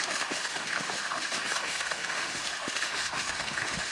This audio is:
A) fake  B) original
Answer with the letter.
A